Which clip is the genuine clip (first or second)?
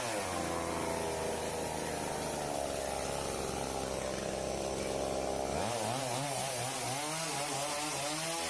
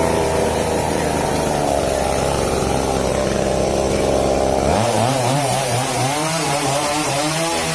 first